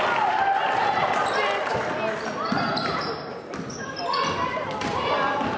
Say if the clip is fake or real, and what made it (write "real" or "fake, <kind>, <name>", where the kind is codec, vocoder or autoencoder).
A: real